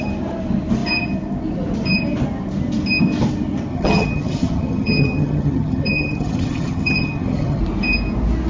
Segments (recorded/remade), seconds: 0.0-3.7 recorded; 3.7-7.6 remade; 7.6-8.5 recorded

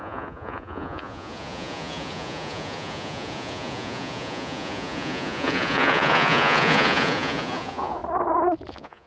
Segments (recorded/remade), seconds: 0.0-8.0 remade; 8.0-8.7 recorded; 8.7-9.1 remade